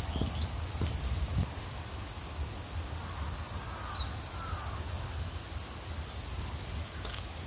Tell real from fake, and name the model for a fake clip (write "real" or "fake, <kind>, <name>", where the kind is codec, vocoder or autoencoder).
real